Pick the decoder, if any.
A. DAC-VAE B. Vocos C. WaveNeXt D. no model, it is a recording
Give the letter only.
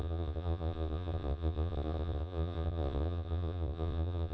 B